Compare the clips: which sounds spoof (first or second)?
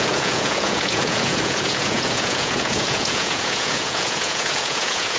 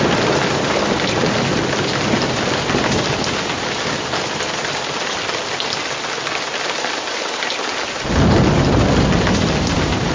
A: first